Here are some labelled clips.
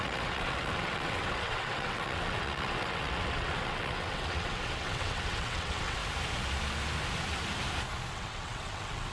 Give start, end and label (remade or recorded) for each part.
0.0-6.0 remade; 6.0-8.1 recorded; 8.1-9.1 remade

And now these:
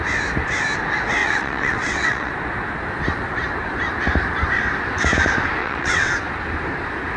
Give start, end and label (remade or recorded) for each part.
0.0-1.2 recorded; 1.2-2.3 remade; 2.3-5.6 recorded; 5.6-6.1 remade; 6.1-7.2 recorded

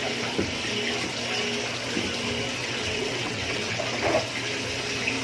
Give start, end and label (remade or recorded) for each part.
0.0-2.6 recorded; 2.6-3.8 remade; 3.8-5.2 recorded

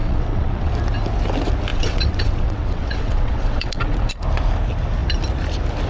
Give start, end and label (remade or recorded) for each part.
0.0-0.7 remade; 0.7-1.7 recorded; 1.7-4.1 remade; 4.1-5.9 recorded